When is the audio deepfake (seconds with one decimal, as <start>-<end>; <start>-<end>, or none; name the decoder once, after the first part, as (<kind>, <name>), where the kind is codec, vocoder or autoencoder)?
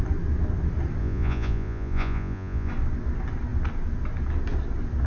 1.0-2.7 (vocoder, Vocos)